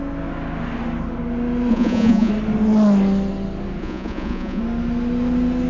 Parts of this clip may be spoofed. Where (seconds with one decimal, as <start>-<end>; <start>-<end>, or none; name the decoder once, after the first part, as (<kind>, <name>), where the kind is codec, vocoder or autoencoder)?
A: 1.7-2.3 (vocoder, Vocos); 3.8-4.6